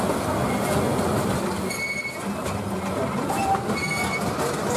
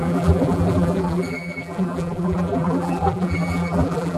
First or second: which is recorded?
first